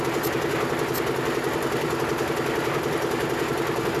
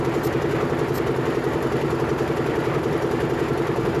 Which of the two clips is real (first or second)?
first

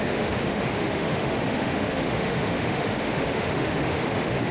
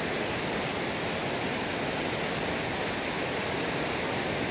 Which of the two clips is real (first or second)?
second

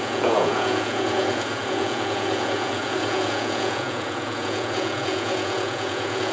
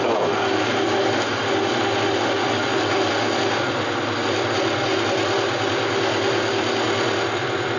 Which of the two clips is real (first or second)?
second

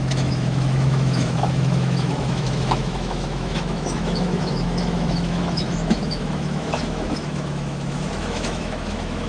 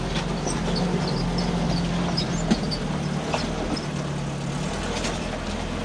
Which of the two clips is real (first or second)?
second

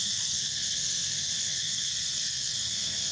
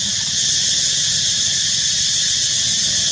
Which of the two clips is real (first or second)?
second